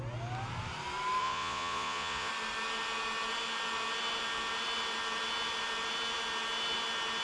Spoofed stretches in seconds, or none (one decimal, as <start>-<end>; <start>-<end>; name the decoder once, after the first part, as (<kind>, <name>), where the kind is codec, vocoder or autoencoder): 1.2-2.3 (vocoder, Vocos)